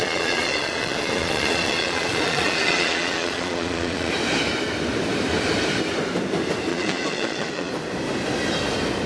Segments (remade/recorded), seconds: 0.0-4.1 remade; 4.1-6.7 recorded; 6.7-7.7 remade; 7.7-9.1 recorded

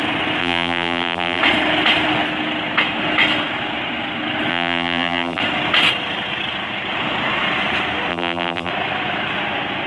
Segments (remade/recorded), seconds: 0.0-0.4 recorded; 0.4-1.4 remade; 1.4-4.5 recorded; 4.5-5.4 remade; 5.4-8.1 recorded; 8.1-8.7 remade; 8.7-9.9 recorded

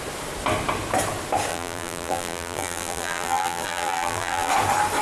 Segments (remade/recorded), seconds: 0.0-1.5 recorded; 1.5-4.5 remade; 4.5-5.0 recorded

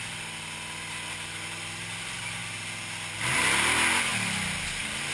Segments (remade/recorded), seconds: 0.0-5.1 recorded